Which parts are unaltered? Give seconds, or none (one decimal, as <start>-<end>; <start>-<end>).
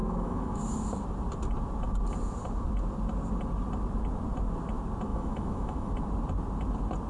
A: 0.6-5.1; 5.9-7.1